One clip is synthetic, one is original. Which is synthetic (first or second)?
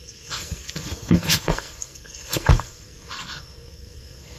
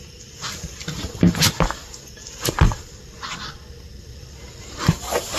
first